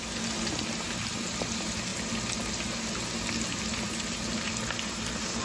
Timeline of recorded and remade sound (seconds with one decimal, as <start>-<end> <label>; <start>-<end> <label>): 0.0-5.4 recorded